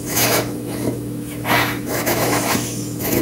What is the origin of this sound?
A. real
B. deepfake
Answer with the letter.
B